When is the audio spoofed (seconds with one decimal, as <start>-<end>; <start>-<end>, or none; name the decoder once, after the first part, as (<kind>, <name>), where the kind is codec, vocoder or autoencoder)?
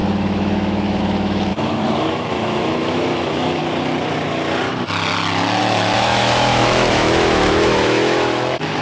0.0-3.6 (autoencoder, DAC-VAE); 5.6-8.8